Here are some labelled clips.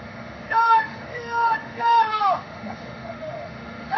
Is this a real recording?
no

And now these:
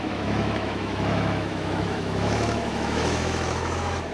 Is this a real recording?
no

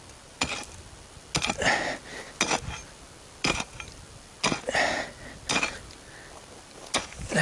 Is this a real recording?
yes